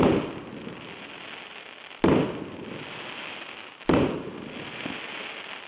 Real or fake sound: real